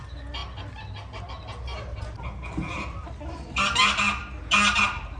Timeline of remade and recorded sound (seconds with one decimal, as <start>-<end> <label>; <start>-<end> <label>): 0.0-5.2 recorded